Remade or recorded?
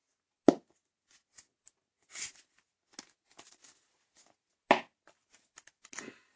recorded